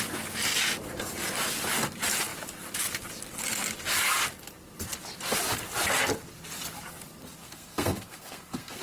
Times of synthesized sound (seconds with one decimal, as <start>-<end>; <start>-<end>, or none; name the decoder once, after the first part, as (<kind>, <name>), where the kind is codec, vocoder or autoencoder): 7.4-8.8 (codec, SNAC)